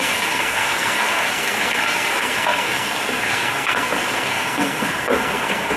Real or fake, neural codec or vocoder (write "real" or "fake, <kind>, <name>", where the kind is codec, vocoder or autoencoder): fake, codec, SNAC